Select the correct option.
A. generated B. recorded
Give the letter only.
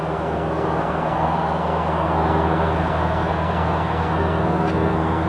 A